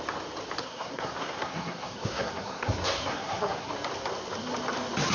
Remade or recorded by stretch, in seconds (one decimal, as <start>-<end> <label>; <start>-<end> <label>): 0.0-0.6 recorded; 0.6-3.7 remade; 3.7-5.1 recorded

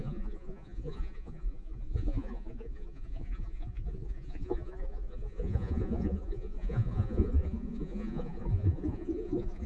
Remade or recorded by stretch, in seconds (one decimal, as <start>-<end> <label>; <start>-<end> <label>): 0.0-9.7 remade

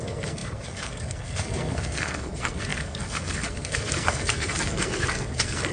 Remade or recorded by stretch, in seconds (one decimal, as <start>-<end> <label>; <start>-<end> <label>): 0.0-5.7 remade